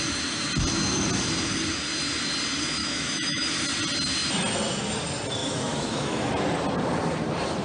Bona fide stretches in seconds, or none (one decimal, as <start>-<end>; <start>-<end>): 0.0-2.8; 3.5-5.4; 6.3-7.6